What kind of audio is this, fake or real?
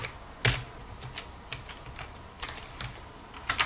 real